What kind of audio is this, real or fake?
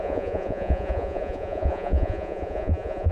fake